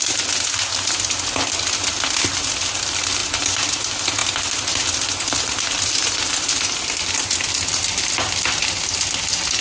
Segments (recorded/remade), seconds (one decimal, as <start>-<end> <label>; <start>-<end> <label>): 0.0-3.2 recorded; 3.2-3.8 remade; 3.8-9.6 recorded